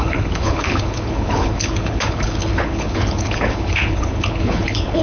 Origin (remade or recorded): remade